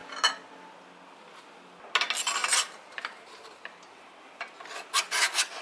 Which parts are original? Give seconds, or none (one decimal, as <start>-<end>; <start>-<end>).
0.0-2.4; 4.1-5.6